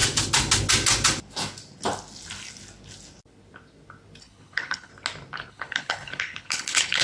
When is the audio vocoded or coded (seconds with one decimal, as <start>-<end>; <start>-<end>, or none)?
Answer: 4.2-4.9; 5.5-7.0